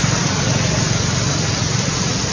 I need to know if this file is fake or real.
real